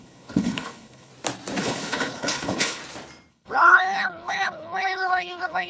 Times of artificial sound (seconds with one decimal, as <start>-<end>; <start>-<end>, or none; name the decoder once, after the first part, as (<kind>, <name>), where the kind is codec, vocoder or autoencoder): 0.0-1.1 (codec, HILCodec); 1.6-2.8; 3.3-5.7